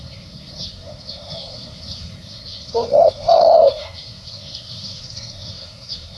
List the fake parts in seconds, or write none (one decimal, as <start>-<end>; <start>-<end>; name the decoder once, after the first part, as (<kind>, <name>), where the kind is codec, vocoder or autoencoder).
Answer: 0.0-6.2 (codec, SNAC)